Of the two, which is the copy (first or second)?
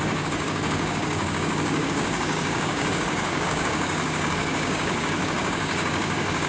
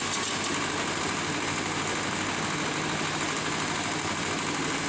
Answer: first